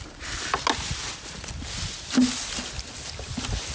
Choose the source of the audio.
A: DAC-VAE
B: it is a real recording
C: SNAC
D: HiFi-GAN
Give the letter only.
B